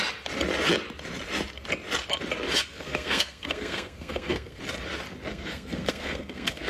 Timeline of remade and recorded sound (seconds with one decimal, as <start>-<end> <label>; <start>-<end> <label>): 0.0-2.6 recorded; 2.6-4.6 remade; 4.6-5.3 recorded; 5.3-6.7 remade